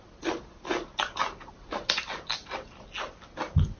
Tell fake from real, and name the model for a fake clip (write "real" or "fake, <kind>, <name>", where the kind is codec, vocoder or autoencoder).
real